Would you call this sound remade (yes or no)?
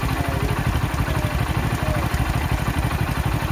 no